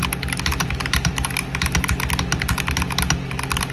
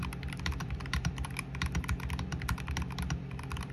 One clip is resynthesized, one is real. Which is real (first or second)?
first